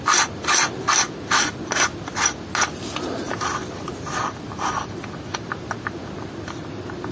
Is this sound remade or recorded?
recorded